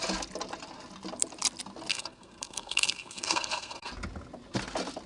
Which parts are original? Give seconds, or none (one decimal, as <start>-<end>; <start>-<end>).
0.0-1.9; 3.9-5.1